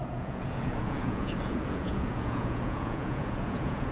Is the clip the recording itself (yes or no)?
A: no